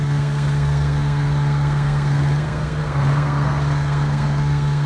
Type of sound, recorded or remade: remade